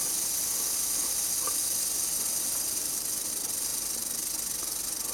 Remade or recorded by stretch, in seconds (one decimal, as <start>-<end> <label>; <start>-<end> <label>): 0.0-5.1 recorded